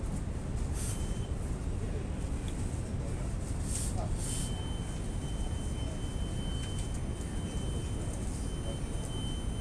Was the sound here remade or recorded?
recorded